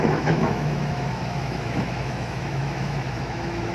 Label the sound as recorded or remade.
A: remade